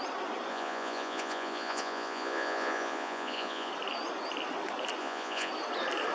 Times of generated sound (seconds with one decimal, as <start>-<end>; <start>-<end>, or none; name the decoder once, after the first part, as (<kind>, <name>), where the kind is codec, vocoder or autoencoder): 0.5-3.7 (vocoder, Vocos); 5.0-5.5